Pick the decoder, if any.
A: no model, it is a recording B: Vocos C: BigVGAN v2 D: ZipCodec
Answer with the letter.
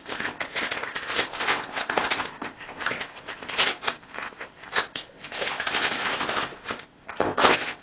D